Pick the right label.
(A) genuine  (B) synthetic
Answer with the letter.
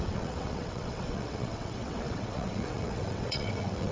B